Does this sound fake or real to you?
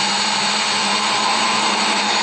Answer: real